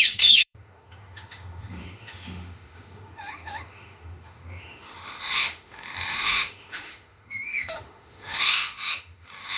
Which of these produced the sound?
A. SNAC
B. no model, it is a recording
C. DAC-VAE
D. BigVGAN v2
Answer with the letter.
C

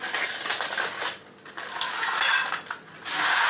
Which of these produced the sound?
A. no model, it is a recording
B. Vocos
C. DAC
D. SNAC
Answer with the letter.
A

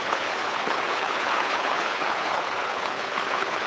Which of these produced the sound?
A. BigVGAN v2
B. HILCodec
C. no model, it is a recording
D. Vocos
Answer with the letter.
B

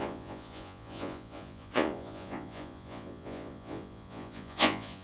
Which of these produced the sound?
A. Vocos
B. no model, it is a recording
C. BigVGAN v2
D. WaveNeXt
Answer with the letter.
A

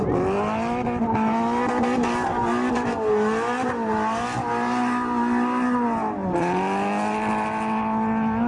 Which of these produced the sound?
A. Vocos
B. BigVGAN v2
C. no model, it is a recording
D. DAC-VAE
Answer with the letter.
C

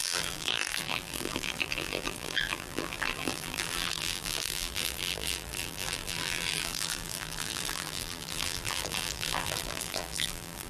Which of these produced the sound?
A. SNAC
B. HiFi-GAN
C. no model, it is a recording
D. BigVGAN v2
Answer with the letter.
D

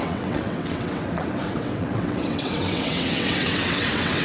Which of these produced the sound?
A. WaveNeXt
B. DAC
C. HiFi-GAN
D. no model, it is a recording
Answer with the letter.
A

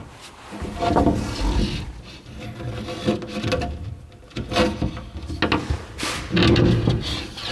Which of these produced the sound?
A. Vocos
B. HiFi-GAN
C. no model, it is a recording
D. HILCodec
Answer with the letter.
C